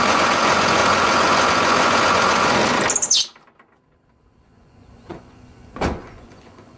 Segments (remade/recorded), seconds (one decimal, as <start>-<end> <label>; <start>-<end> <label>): 0.0-2.6 remade; 2.6-4.4 recorded; 4.4-6.8 remade